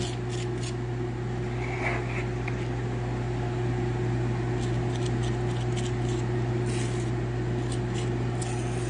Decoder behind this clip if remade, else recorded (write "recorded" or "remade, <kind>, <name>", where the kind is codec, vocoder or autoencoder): recorded